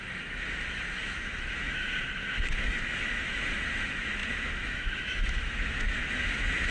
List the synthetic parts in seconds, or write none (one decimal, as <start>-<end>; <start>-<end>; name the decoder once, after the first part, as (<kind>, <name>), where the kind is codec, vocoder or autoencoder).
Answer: 0.0-6.7 (autoencoder, DAC-VAE)